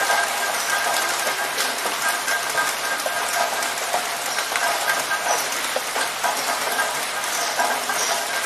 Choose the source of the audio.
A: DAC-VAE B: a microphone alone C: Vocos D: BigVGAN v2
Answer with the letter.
D